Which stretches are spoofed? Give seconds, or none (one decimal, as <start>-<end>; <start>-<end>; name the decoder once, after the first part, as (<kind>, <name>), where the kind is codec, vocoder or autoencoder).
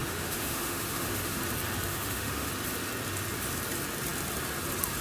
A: 0.0-1.4 (autoencoder, DAC-VAE); 1.9-2.5